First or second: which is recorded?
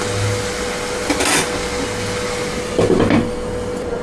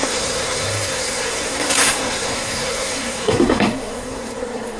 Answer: first